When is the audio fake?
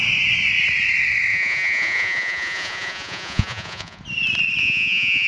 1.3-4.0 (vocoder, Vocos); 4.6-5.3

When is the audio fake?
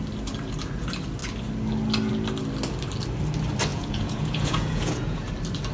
3.7-5.3 (vocoder, Vocos)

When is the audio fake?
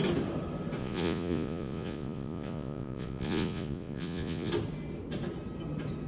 0.8-4.5 (vocoder, Vocos)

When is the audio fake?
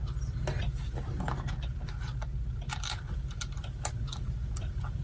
none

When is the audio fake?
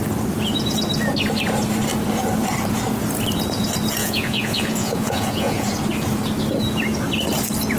4.0-5.7 (vocoder, Vocos)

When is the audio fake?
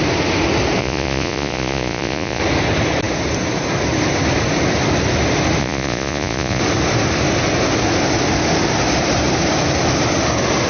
0.8-2.4 (vocoder, Vocos); 5.6-6.6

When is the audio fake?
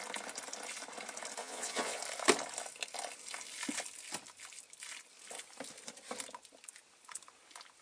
1.4-2.0 (vocoder, Vocos)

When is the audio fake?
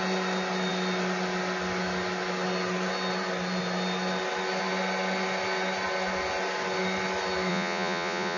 7.5-8.4 (vocoder, Vocos)